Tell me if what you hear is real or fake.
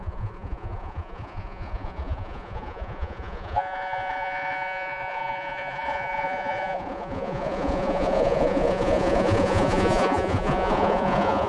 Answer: fake